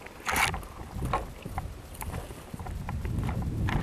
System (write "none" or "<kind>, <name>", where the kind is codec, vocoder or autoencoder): none